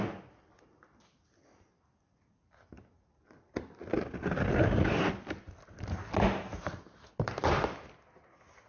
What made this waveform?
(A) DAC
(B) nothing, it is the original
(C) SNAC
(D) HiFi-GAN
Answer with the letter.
B